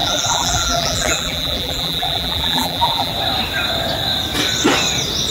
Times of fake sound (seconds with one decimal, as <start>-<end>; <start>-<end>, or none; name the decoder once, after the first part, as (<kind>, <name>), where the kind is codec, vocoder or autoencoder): 0.0-3.1 (vocoder, BigVGAN v2)